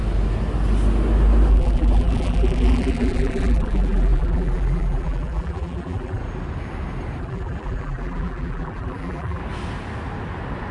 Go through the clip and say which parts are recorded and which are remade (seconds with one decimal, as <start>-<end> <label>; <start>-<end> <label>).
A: 0.0-1.5 recorded; 1.5-6.2 remade; 6.2-7.2 recorded; 7.2-9.4 remade; 9.4-10.7 recorded